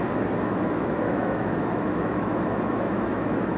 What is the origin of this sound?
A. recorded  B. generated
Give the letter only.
B